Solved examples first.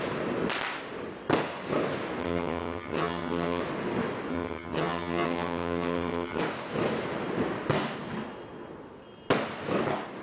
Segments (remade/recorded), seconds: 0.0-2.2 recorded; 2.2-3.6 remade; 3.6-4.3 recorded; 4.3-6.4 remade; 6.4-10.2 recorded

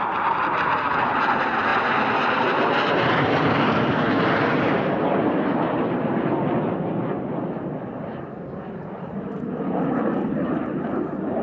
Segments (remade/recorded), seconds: 0.0-11.4 recorded

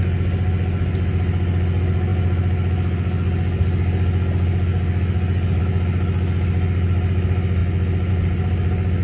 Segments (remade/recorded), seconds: 0.0-9.0 recorded